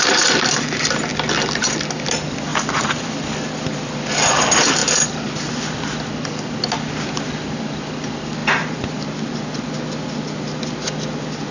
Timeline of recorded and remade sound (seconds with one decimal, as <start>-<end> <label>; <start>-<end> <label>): 0.0-2.5 recorded; 2.5-4.2 remade; 4.2-4.8 recorded; 4.8-5.5 remade; 5.5-8.4 recorded; 8.4-9.0 remade; 9.0-11.5 recorded